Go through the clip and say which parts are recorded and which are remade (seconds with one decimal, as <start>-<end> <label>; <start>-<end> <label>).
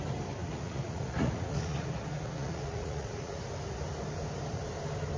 0.0-0.4 recorded; 0.4-3.5 remade; 3.5-5.2 recorded